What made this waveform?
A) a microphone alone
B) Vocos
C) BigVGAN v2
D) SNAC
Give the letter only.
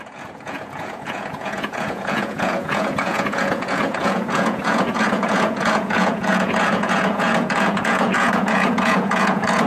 B